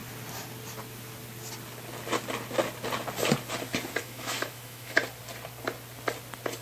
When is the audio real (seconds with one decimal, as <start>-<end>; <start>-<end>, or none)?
0.0-4.0; 5.0-6.6